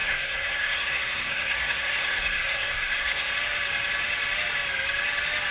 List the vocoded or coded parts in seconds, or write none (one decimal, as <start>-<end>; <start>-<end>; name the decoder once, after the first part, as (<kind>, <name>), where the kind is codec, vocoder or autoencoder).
0.0-3.3 (codec, SNAC)